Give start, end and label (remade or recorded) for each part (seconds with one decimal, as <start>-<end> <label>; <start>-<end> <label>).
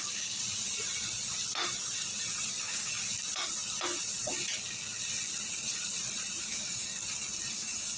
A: 0.0-0.4 remade; 0.4-2.6 recorded; 2.6-3.0 remade; 3.0-6.4 recorded; 6.4-6.9 remade; 6.9-7.5 recorded; 7.5-8.0 remade